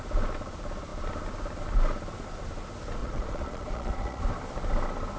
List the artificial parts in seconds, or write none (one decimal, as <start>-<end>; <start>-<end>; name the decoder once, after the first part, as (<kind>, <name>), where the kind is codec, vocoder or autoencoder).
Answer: 3.0-4.2 (vocoder, Vocos)